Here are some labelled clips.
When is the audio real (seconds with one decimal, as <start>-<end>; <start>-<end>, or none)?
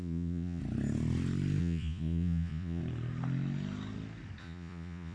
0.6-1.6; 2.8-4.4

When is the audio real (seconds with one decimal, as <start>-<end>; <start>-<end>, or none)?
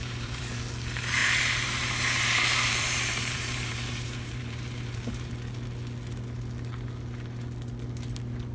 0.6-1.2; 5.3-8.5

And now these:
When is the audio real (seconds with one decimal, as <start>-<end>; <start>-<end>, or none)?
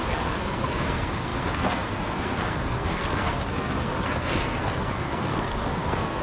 none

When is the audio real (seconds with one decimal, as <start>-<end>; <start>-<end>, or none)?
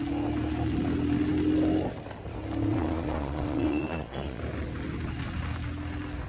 0.0-2.7; 4.4-6.3